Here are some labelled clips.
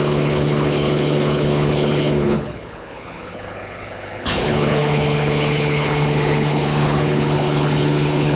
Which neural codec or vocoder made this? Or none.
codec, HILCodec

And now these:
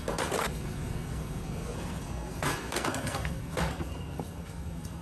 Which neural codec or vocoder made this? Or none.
codec, SNAC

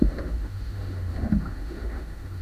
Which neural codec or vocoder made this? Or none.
autoencoder, DAC-VAE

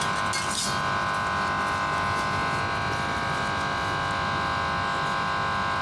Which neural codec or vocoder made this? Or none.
none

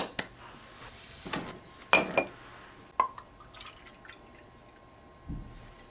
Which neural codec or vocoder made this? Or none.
none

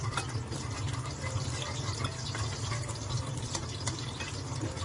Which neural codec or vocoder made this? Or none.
none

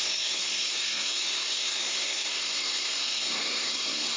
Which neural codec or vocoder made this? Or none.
codec, SNAC